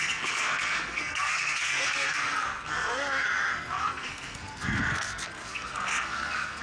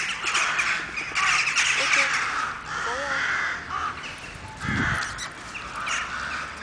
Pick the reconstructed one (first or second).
first